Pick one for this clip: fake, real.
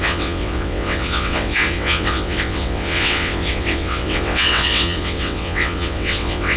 fake